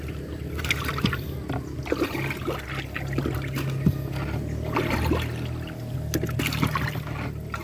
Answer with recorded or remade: recorded